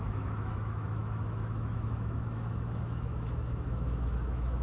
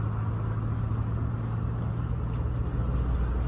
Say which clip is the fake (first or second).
first